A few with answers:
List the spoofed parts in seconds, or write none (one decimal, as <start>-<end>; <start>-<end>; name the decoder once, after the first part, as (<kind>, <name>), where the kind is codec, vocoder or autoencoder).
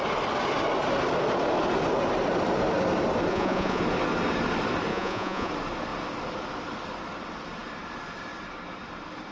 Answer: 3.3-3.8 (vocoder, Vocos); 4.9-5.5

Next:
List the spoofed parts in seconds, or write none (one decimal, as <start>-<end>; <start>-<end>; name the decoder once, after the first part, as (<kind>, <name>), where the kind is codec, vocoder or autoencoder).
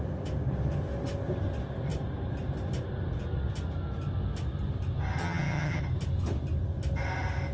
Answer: 5.2-5.8 (vocoder, HiFi-GAN)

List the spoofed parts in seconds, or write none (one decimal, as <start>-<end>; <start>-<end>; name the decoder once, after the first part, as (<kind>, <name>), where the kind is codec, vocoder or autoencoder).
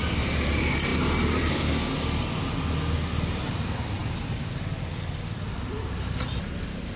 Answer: none